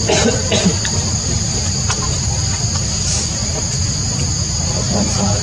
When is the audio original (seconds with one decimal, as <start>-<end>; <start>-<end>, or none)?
3.4-4.4